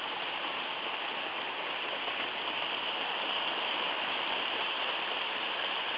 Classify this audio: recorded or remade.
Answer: recorded